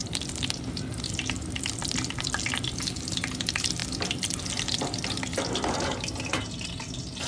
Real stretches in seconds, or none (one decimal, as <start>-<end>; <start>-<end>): 2.4-3.8; 4.4-7.3